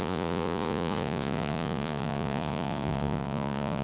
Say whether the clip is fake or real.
fake